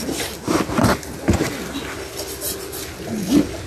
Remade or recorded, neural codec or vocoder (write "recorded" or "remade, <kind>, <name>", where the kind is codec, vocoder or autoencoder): recorded